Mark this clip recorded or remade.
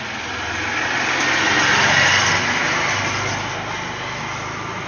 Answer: recorded